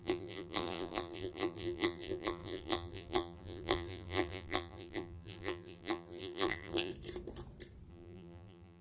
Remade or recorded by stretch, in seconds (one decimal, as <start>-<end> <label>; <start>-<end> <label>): 0.0-6.9 remade; 6.9-7.9 recorded; 7.9-8.8 remade

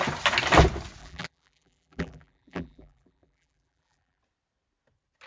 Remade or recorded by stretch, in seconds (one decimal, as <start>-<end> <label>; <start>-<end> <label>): 0.0-1.0 recorded; 1.0-4.2 remade; 4.2-5.3 recorded

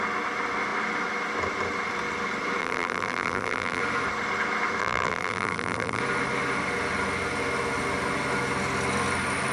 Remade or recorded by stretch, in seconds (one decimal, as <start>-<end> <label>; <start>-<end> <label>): 0.0-2.6 recorded; 2.6-3.8 remade; 3.8-4.8 recorded; 4.8-6.0 remade; 6.0-9.5 recorded